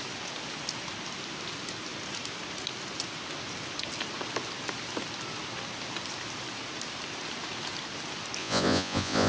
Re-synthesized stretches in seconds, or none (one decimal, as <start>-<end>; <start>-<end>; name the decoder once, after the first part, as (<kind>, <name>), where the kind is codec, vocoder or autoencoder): 8.4-9.3 (vocoder, Vocos)